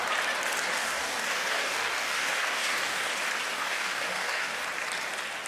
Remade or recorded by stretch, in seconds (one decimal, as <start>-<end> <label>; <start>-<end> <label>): 0.0-0.7 recorded; 0.7-3.1 remade; 3.1-3.5 recorded; 3.5-4.6 remade; 4.6-5.5 recorded